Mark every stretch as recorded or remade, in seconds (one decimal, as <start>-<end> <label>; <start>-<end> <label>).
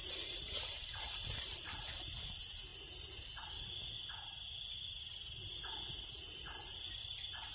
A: 0.0-1.9 remade; 1.9-2.7 recorded; 2.7-3.4 remade; 3.4-7.5 recorded